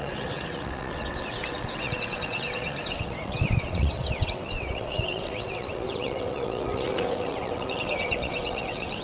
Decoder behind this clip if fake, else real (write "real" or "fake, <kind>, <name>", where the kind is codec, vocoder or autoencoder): fake, vocoder, WaveNeXt